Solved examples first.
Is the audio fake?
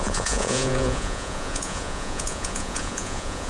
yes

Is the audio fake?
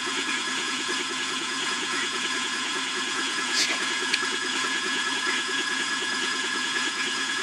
yes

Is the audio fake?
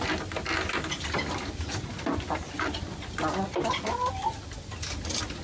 no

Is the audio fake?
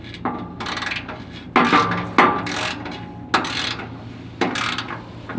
no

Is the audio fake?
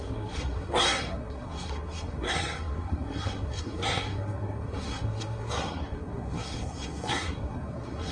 yes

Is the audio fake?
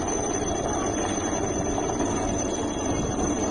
no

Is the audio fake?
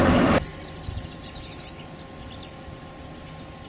no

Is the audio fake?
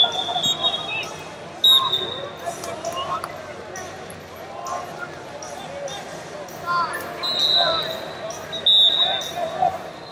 no